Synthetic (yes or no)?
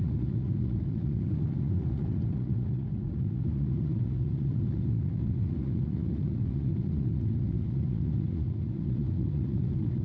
yes